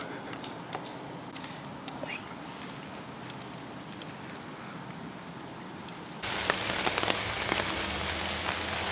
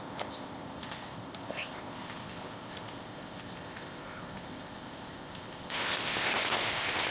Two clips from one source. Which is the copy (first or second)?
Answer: second